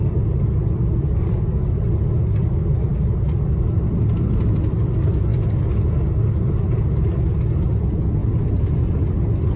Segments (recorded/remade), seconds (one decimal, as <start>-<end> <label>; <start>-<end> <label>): 0.0-9.6 recorded